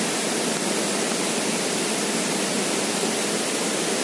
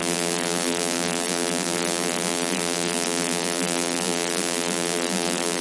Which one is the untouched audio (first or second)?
first